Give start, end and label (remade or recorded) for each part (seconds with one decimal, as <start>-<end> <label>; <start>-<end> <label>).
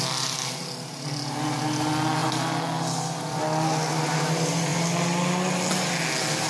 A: 0.0-6.5 recorded